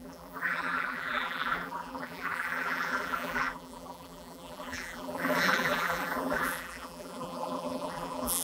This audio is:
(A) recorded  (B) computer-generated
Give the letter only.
B